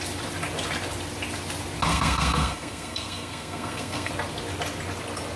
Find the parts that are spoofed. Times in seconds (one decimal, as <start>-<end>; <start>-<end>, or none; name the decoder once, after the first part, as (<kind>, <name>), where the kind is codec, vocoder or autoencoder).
1.9-4.1 (codec, SNAC)